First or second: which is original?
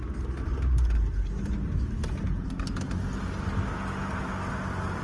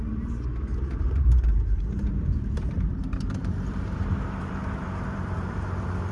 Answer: first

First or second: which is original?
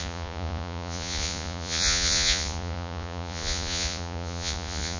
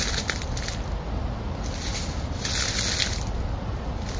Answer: second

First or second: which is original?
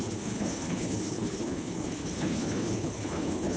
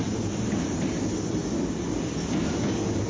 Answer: second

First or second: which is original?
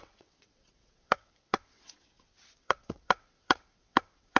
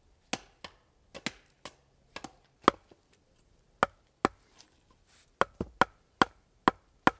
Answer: second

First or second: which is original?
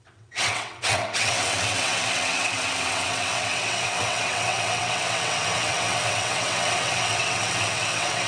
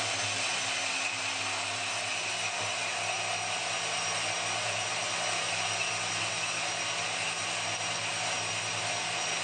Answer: second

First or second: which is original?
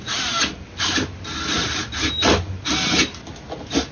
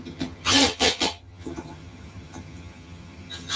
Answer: first